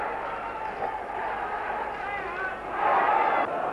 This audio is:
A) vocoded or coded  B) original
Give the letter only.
B